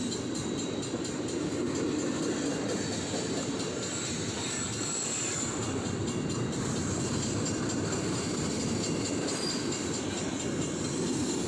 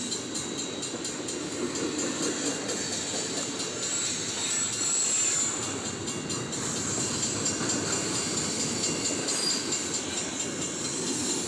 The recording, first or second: second